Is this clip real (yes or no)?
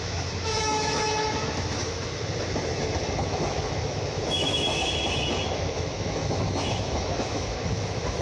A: no